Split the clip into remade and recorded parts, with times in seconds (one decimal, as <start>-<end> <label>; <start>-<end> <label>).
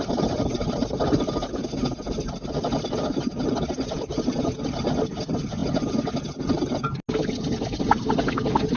0.0-8.8 recorded